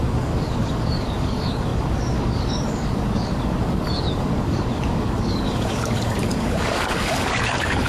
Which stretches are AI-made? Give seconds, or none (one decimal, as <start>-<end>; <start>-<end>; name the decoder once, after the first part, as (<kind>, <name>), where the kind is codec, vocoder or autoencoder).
0.0-7.9 (codec, DAC)